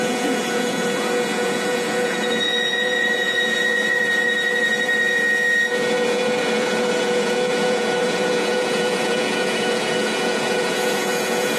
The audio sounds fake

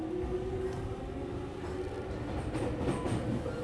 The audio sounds real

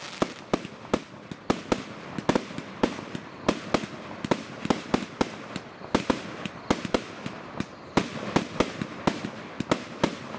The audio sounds real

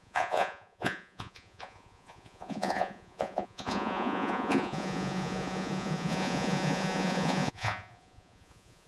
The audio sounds fake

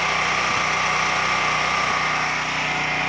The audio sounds real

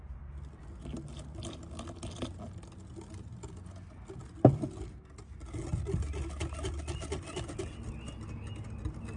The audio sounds real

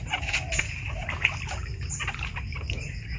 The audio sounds real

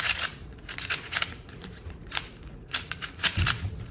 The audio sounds fake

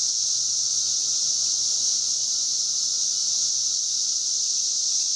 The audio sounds fake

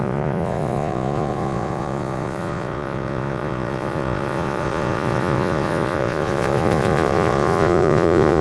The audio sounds fake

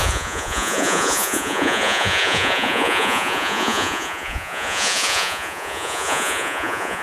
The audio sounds fake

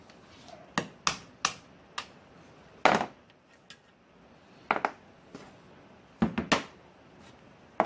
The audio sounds real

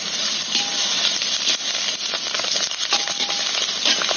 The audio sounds real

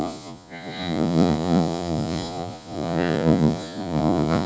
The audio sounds fake